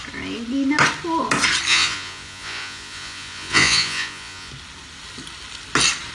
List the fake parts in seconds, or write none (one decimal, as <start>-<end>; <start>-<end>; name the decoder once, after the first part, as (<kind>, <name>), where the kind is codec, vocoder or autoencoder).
1.7-4.5 (vocoder, Vocos)